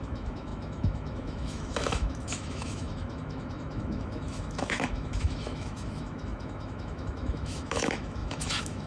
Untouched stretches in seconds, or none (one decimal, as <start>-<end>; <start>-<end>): none

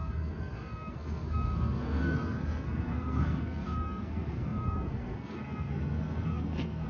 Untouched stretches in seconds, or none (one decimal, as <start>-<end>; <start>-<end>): none

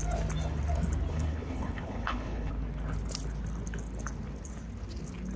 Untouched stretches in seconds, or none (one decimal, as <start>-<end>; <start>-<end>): 0.0-1.1; 2.5-5.4